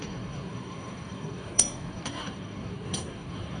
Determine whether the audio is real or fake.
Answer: fake